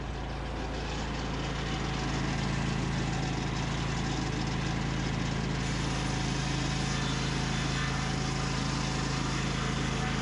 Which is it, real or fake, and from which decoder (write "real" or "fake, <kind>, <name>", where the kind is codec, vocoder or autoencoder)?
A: real